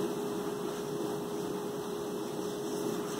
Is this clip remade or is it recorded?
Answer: recorded